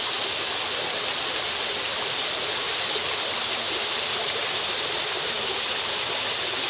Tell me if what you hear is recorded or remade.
recorded